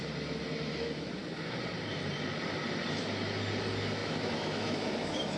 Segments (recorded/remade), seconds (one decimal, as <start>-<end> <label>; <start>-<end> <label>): 0.0-0.7 recorded; 0.7-1.2 remade; 1.2-4.0 recorded; 4.0-5.4 remade